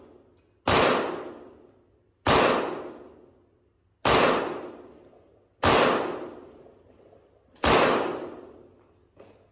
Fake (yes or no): no